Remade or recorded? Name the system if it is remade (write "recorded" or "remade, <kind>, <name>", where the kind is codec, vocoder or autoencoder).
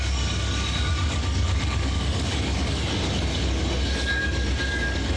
remade, codec, DAC